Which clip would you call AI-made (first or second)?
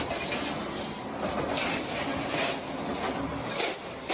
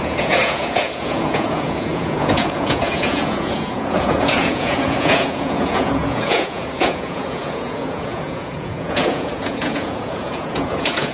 second